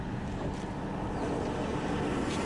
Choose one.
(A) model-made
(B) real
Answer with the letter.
B